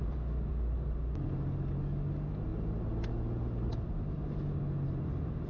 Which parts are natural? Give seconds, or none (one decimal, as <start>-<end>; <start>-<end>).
0.0-5.5